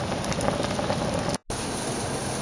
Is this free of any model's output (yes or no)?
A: yes